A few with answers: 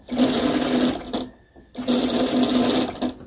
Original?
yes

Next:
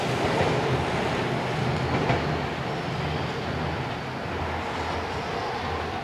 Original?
yes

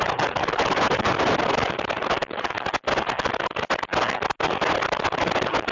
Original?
yes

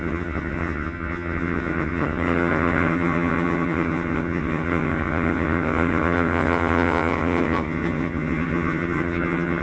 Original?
no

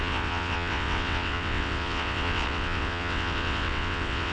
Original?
no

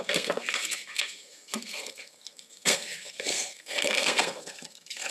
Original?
no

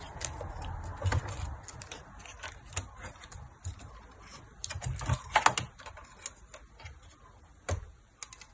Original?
yes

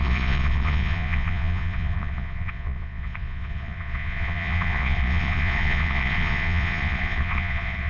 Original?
no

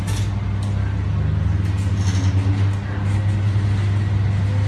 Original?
yes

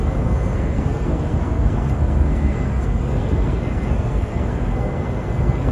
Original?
no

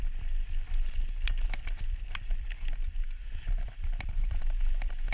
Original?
yes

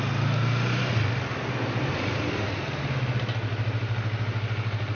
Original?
yes